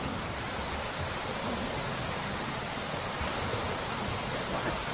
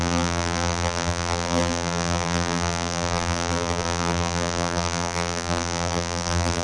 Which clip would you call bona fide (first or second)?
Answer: first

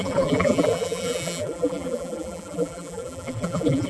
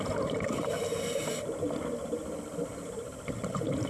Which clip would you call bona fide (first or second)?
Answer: second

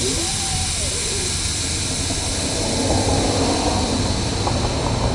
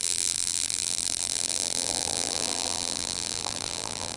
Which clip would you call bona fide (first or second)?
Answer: first